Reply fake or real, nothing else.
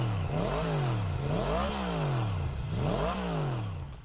real